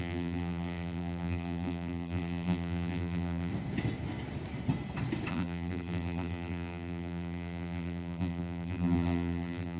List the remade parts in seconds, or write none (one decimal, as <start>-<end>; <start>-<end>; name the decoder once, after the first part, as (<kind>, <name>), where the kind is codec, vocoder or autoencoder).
0.0-3.5 (vocoder, BigVGAN v2); 5.3-9.8